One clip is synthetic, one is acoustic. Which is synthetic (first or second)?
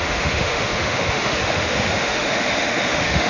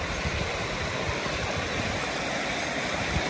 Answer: first